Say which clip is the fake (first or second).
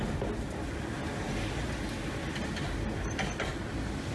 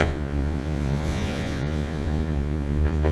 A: second